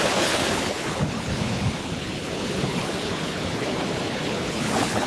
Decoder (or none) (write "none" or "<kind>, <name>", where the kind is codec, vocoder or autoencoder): codec, HILCodec